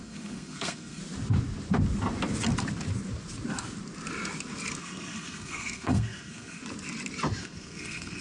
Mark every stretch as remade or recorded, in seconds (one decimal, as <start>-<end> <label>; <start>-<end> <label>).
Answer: 0.0-1.0 remade; 1.0-4.8 recorded; 4.8-6.6 remade; 6.6-7.4 recorded; 7.4-8.2 remade